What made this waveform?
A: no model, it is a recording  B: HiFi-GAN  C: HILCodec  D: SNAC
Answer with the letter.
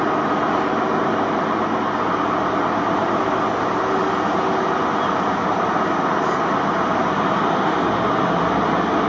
A